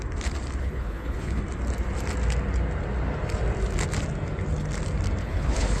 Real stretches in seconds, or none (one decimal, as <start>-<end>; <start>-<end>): 0.0-0.6; 1.4-5.2